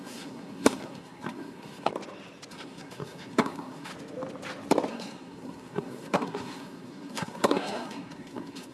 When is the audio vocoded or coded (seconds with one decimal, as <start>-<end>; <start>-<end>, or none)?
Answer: 0.0-1.9; 2.5-3.9; 4.9-8.7